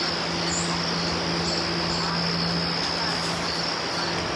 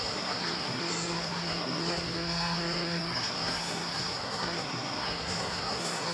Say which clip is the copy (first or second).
second